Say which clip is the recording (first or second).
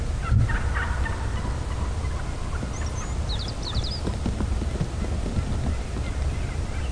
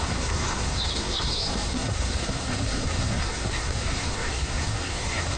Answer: first